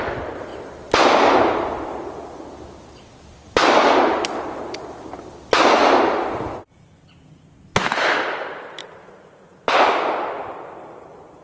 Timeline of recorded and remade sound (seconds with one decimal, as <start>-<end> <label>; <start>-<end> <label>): 0.0-7.7 recorded; 7.7-9.1 remade; 9.1-11.4 recorded